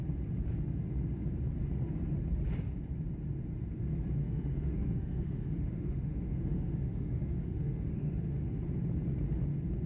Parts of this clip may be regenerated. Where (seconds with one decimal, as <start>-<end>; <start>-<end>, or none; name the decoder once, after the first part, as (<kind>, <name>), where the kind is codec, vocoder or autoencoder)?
4.2-8.4 (autoencoder, DAC-VAE)